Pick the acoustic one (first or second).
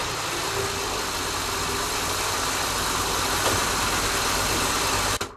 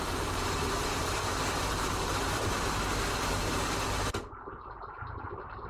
first